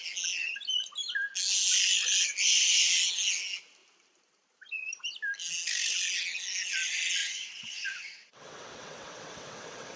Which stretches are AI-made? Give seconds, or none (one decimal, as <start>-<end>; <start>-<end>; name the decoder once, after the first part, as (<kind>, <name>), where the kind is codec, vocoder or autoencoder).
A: 7.2-10.0 (vocoder, WaveNeXt)